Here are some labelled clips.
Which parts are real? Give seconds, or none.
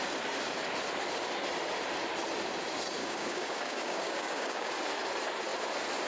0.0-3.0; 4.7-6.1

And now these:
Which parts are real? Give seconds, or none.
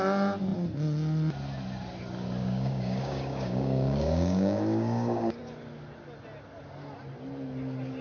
0.0-2.4; 5.4-8.0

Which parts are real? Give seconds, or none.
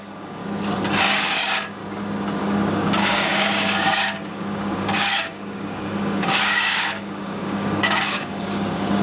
0.4-1.0; 1.8-2.4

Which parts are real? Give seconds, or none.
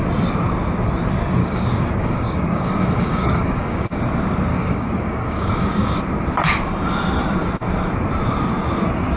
0.0-1.4; 4.0-4.5; 6.0-9.2